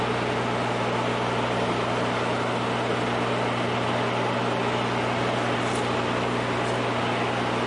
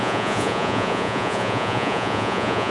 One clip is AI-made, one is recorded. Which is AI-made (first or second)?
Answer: second